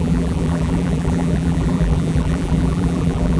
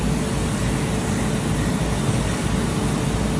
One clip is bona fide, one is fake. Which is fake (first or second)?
first